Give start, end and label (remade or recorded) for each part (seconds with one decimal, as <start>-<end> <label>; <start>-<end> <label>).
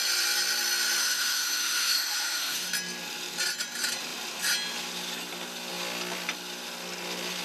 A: 0.0-1.0 recorded; 1.0-2.7 remade; 2.7-7.4 recorded